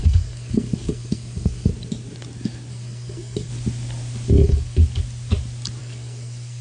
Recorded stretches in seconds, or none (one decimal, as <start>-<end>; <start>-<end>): 1.7-2.7; 3.5-4.3; 4.8-5.8

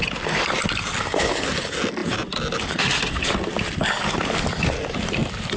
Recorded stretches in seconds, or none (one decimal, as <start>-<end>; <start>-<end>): 0.0-5.6

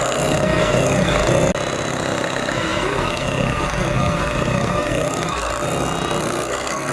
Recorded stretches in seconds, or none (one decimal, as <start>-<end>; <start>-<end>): 1.2-1.9; 5.5-6.2

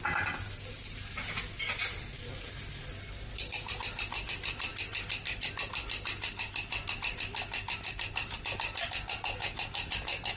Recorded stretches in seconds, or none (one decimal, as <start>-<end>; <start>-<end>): 0.0-10.4

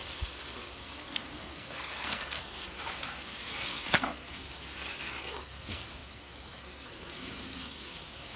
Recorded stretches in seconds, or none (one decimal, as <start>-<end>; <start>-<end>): none

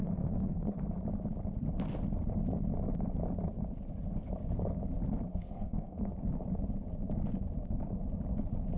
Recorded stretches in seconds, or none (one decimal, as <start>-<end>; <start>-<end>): 0.8-5.3; 6.1-8.8

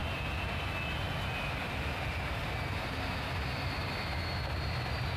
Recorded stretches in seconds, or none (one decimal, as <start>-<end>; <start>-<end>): 0.0-5.2